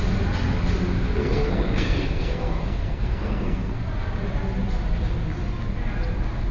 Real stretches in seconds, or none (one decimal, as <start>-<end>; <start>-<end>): 0.0-1.2; 3.8-6.5